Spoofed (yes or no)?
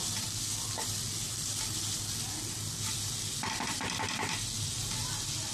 no